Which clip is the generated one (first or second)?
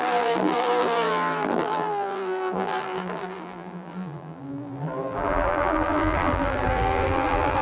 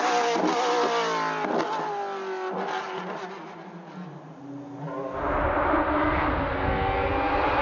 first